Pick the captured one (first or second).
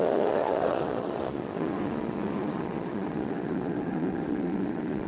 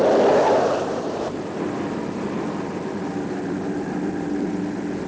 second